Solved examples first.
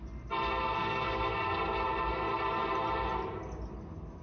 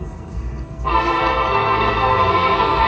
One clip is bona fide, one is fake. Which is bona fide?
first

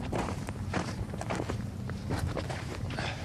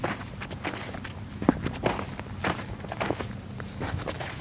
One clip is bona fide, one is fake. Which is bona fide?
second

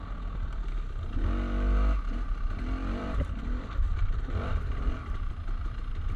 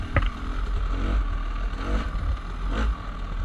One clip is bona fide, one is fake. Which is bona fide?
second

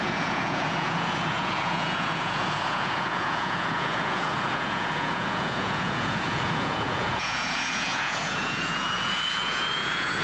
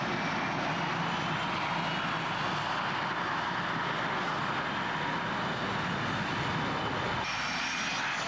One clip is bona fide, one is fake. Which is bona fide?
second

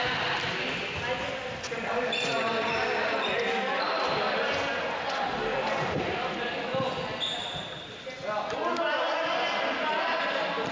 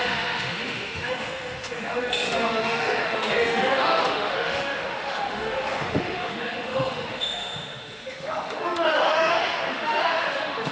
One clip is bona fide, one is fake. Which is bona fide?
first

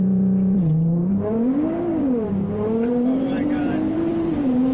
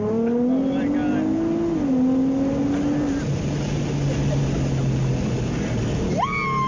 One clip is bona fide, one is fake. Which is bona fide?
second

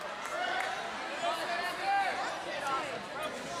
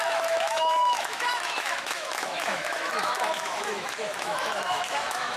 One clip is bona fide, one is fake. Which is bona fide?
first